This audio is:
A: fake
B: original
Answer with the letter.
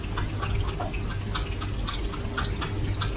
B